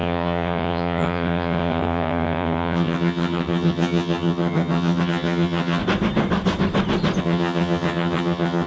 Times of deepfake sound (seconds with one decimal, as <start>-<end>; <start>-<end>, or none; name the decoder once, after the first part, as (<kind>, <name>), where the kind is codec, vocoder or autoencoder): 0.0-5.8 (vocoder, HiFi-GAN); 7.2-8.7